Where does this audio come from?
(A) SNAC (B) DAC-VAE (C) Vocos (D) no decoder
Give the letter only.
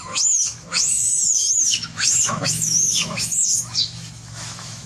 B